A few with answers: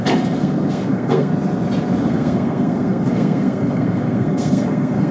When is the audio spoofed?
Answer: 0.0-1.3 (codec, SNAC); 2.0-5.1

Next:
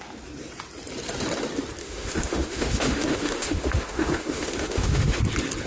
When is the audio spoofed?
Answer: 1.8-5.2 (autoencoder, DAC-VAE)

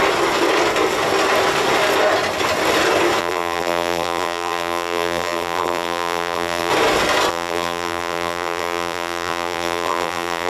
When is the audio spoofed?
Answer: 3.2-6.7 (vocoder, BigVGAN v2); 7.3-10.5

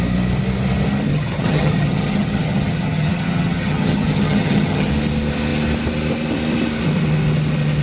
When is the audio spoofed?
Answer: 1.1-4.9 (vocoder, HiFi-GAN)

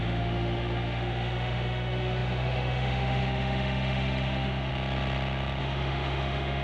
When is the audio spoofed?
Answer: 0.0-4.7 (autoencoder, DAC-VAE); 5.6-6.6